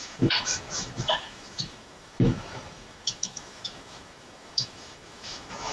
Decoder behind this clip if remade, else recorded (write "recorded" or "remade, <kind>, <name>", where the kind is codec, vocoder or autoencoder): remade, autoencoder, DAC-VAE